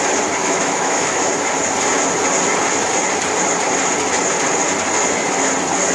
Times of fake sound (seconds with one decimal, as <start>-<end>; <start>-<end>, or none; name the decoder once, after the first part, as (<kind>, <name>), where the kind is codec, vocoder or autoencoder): 0.4-1.3 (autoencoder, DAC-VAE)